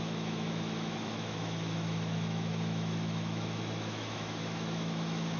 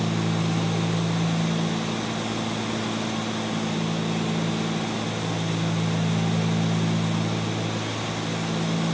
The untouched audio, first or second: second